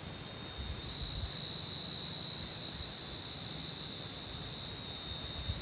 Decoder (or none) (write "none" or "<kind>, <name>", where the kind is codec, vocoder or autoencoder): none